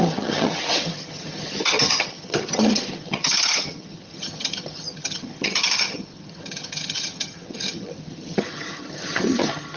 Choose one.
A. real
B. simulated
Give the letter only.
B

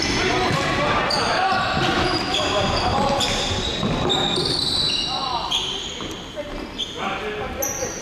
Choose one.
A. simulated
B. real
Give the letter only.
B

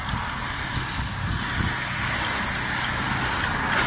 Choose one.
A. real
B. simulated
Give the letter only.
A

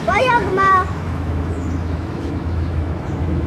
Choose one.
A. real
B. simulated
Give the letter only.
B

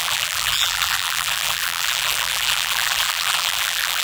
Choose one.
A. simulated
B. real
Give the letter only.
A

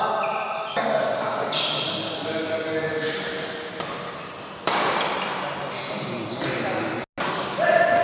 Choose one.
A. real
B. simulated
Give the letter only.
A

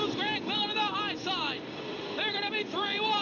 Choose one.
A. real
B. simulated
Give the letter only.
B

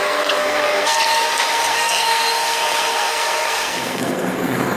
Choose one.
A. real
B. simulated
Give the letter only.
B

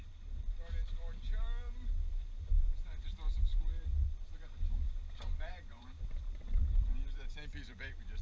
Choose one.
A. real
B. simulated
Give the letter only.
B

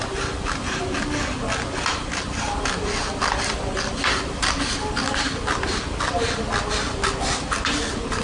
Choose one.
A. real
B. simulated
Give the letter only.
A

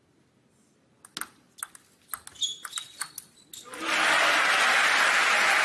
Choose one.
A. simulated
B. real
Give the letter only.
B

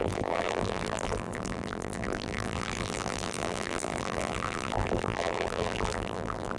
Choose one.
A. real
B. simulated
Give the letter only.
B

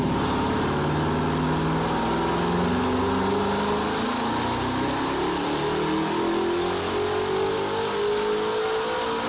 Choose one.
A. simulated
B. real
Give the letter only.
B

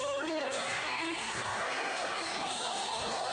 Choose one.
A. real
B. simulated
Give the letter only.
B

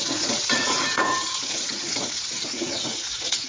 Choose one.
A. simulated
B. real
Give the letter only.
A